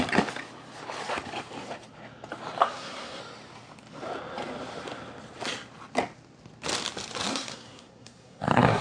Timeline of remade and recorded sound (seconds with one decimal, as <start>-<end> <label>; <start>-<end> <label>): 0.0-2.6 recorded; 2.6-3.2 remade; 3.2-7.3 recorded; 7.3-8.8 remade

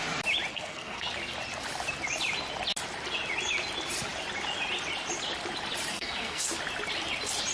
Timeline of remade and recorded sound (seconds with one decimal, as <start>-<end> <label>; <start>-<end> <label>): 0.0-0.5 recorded; 0.5-1.1 remade; 1.1-5.9 recorded; 5.9-6.5 remade; 6.5-7.5 recorded

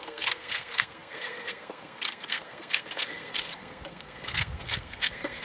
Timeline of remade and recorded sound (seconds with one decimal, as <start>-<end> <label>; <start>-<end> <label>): 0.0-5.4 remade

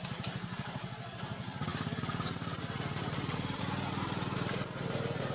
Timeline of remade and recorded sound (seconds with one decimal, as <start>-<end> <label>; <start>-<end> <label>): 0.0-5.3 recorded

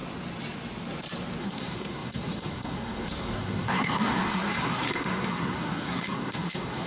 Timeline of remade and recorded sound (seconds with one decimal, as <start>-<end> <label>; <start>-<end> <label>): 0.0-1.4 recorded; 1.4-6.9 remade

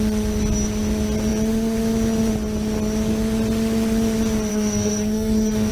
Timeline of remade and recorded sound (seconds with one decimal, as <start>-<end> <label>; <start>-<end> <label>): 0.0-4.5 recorded; 4.5-5.7 remade

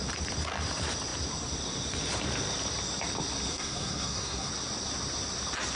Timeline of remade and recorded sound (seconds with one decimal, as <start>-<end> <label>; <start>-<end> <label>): 0.0-3.5 recorded; 3.5-4.5 remade; 4.5-5.8 recorded

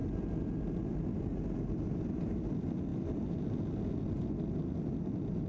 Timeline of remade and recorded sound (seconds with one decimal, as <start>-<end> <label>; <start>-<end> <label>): 0.0-5.5 recorded